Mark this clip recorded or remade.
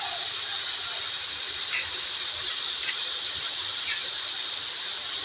recorded